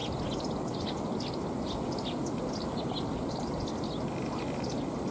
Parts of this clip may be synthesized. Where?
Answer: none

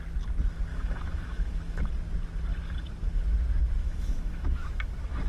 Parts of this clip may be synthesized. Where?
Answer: 0.7-1.8 (autoencoder, DAC-VAE); 3.8-4.8

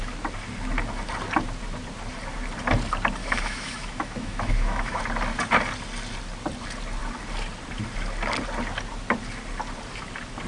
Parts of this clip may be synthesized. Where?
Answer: 3.2-5.0 (autoencoder, DAC-VAE)

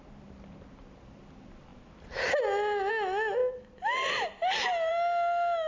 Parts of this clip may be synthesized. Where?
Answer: none